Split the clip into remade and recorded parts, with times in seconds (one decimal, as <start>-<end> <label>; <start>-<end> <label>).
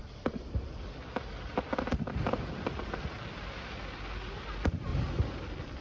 0.0-3.4 remade; 3.4-4.9 recorded; 4.9-5.8 remade